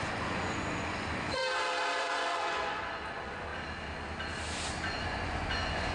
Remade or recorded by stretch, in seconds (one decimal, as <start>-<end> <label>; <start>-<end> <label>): 0.0-1.4 remade; 1.4-2.0 recorded; 2.0-3.5 remade; 3.5-4.7 recorded; 4.7-5.9 remade